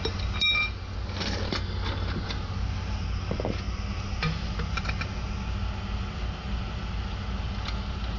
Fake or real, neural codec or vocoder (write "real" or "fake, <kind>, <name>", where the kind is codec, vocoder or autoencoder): real